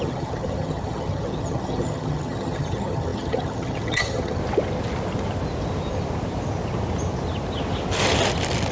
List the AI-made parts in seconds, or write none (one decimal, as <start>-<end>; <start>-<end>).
0.0-4.4